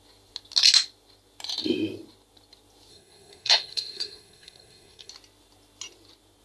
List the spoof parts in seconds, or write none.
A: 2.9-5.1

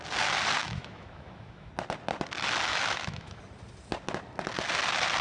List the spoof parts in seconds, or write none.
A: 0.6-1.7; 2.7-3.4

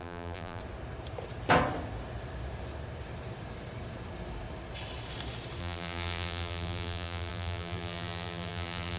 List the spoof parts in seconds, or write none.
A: 0.0-0.6; 5.6-9.0